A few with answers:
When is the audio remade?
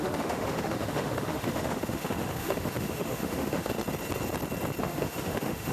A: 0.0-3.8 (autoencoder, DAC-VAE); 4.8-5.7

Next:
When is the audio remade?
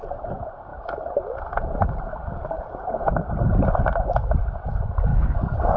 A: 5.1-5.8 (codec, DAC)